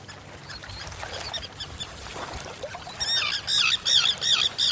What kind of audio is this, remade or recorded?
recorded